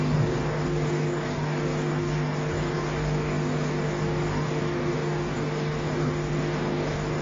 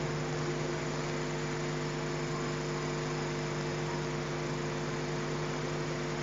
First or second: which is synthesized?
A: first